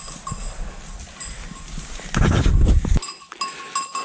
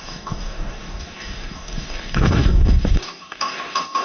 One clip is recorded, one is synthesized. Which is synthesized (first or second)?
second